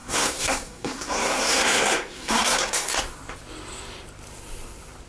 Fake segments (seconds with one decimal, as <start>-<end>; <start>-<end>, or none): 0.0-3.0